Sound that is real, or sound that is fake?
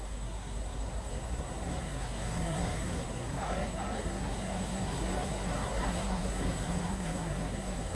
fake